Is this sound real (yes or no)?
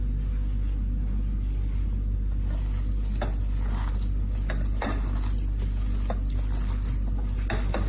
yes